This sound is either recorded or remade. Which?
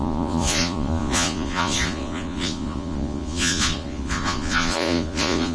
remade